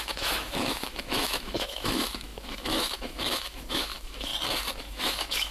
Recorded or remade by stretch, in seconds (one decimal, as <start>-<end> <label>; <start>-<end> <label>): 0.0-4.3 remade; 4.3-4.8 recorded; 4.8-5.5 remade